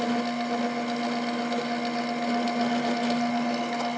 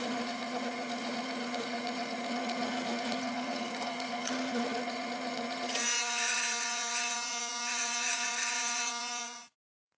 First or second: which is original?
first